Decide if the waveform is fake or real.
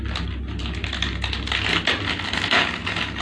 real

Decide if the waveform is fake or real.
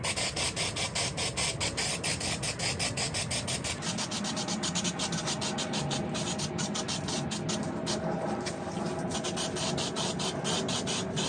real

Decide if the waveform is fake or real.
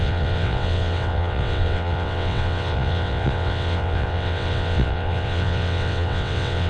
fake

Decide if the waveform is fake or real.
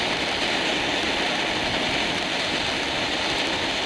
real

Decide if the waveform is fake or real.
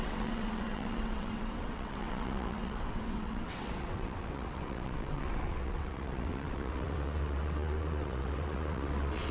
fake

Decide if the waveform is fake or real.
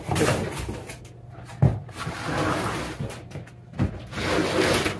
real